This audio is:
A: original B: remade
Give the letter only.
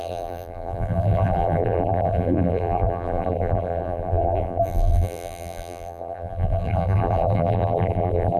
B